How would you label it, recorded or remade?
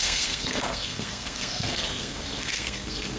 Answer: remade